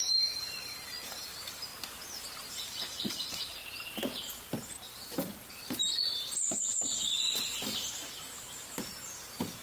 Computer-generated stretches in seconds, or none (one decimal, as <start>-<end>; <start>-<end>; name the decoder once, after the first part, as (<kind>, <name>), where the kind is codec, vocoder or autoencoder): 0.0-1.7 (vocoder, BigVGAN v2); 2.5-3.6; 4.6-9.6